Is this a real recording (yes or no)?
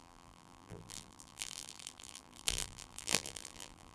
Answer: no